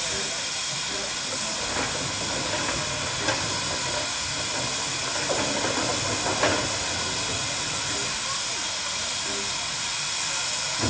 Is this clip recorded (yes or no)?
yes